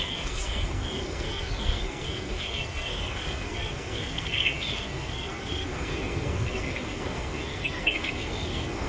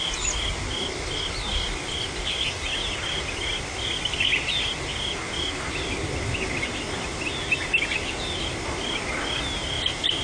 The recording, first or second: second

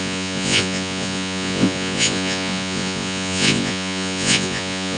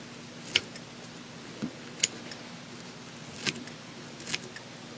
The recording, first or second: second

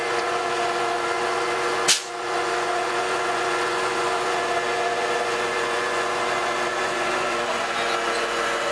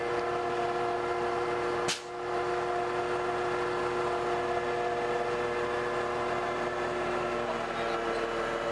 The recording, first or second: second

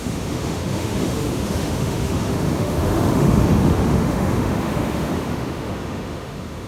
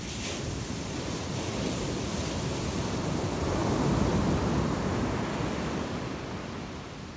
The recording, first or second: second